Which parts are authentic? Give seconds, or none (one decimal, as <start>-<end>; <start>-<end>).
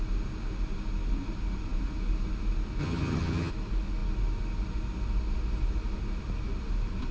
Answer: 0.0-2.8; 3.5-7.1